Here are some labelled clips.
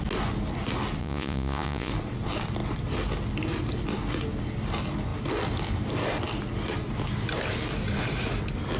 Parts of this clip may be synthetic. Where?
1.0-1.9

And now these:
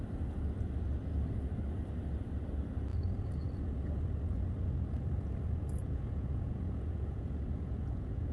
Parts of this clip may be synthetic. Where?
5.8-8.3